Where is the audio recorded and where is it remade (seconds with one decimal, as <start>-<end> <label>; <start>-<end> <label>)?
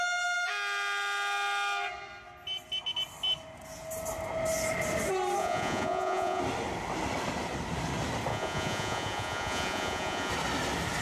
0.0-5.4 recorded; 5.4-6.4 remade; 6.4-8.3 recorded; 8.3-10.3 remade; 10.3-11.0 recorded